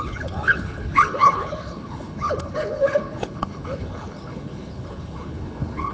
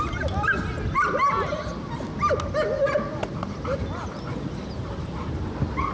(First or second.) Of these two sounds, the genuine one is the second